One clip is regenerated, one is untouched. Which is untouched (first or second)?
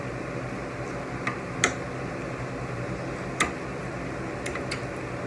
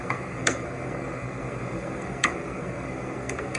first